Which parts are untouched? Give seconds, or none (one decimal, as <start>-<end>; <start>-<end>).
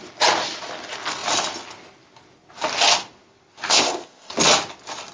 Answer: 0.0-3.7; 4.3-5.1